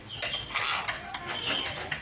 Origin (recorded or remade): recorded